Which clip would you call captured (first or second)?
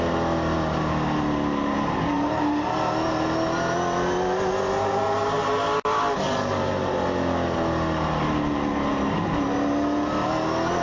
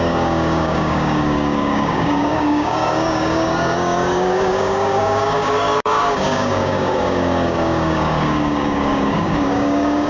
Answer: first